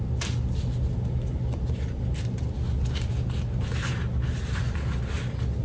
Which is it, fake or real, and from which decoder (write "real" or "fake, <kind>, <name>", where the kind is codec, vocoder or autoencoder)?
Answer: real